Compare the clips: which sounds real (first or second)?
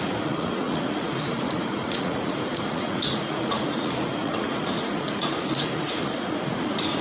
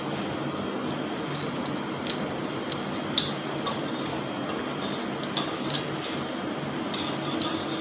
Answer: second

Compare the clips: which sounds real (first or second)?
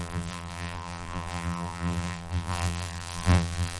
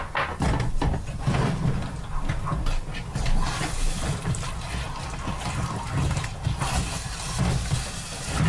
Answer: second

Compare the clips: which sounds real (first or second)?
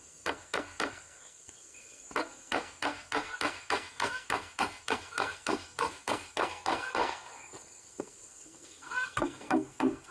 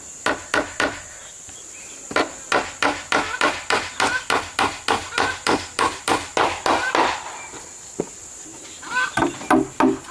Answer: second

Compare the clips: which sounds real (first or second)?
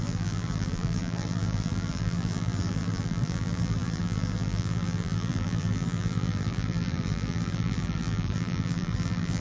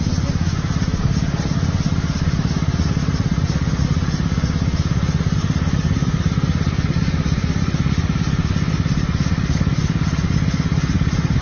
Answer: second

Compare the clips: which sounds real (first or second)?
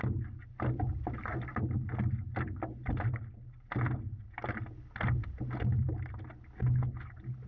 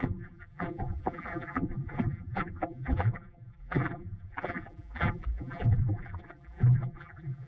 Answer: first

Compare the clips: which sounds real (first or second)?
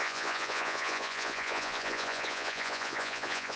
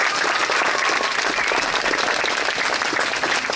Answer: second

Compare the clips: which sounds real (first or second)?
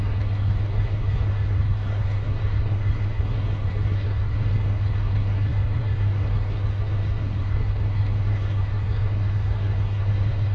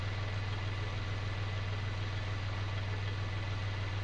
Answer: second